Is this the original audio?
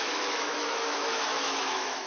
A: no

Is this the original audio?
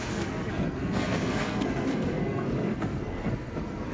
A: no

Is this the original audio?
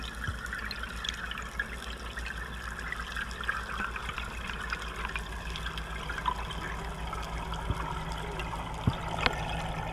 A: yes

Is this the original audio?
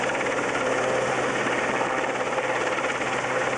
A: yes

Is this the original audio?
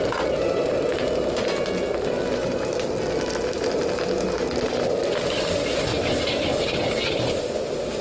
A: yes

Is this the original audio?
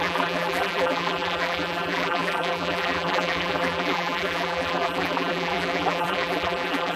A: no